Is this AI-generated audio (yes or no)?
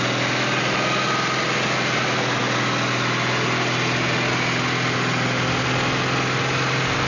no